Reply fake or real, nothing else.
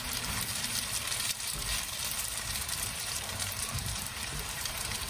fake